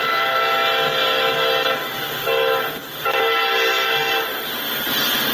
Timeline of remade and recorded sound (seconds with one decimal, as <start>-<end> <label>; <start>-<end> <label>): 0.0-5.3 recorded